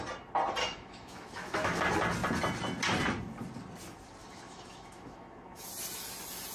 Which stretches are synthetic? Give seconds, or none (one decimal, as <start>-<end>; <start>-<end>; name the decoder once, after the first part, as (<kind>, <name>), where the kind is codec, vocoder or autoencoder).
0.6-1.8 (autoencoder, DAC-VAE); 4.2-5.7